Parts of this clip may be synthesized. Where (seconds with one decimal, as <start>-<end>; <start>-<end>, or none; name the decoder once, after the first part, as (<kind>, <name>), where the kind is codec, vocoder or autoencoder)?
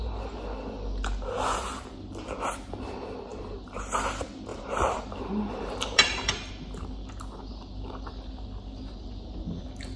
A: 3.3-3.8 (vocoder, BigVGAN v2); 4.5-6.5